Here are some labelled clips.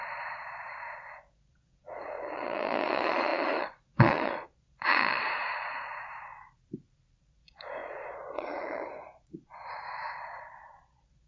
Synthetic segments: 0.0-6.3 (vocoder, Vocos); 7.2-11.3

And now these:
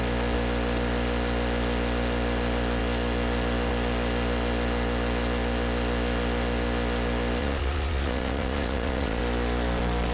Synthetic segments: 7.4-9.2 (vocoder, Vocos)

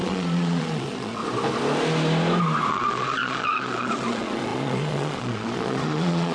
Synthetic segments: 0.0-1.2 (vocoder, Vocos); 2.7-6.3

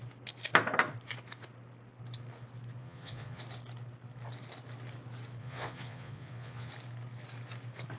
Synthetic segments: 2.8-3.4 (vocoder, Vocos); 5.4-6.7